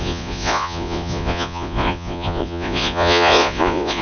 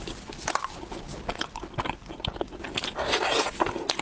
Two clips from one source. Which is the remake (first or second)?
first